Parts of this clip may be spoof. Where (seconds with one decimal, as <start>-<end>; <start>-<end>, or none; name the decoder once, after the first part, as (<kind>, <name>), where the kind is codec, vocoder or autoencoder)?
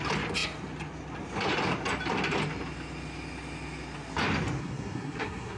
4.6-5.6 (codec, SNAC)